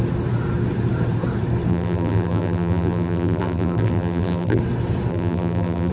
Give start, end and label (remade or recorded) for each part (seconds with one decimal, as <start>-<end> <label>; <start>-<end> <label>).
0.0-1.7 recorded; 1.7-4.6 remade; 4.6-5.1 recorded; 5.1-5.9 remade